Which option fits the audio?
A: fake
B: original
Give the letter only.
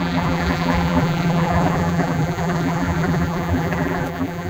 A